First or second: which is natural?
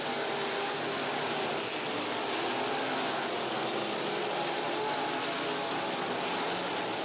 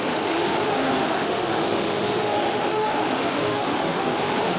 first